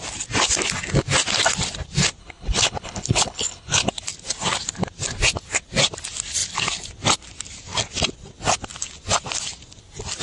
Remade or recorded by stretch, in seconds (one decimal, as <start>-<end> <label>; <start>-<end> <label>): 0.0-2.2 recorded; 2.2-3.9 remade; 3.9-10.2 recorded